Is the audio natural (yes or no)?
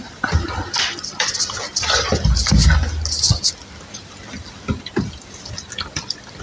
yes